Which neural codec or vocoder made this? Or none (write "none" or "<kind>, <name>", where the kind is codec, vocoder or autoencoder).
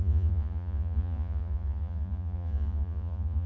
vocoder, Vocos